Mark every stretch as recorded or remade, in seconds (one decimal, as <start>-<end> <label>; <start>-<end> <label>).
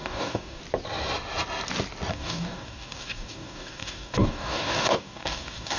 0.0-0.6 remade; 0.6-2.1 recorded; 2.1-5.8 remade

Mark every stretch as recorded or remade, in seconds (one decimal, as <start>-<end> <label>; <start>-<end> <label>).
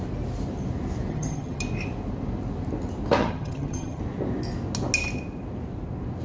0.0-1.1 recorded; 1.1-1.6 remade; 1.6-3.2 recorded; 3.2-4.0 remade; 4.0-6.2 recorded